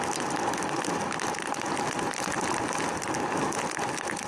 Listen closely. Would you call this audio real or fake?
real